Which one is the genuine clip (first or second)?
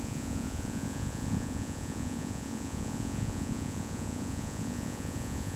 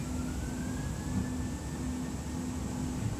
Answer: second